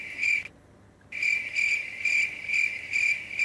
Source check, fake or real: real